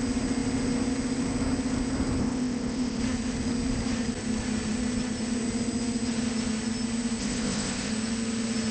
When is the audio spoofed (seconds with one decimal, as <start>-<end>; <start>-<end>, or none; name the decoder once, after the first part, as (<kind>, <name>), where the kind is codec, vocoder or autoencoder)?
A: 2.2-3.0 (codec, ZipCodec); 7.2-7.9